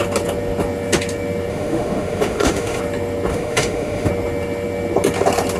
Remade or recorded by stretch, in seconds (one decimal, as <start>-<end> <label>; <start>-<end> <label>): 0.0-1.5 recorded; 1.5-2.8 remade; 2.8-3.3 recorded; 3.3-4.1 remade; 4.1-5.6 recorded